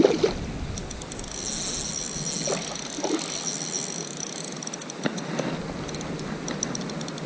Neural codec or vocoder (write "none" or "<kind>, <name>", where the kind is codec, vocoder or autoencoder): none